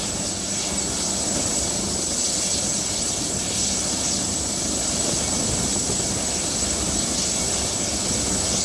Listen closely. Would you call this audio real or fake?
real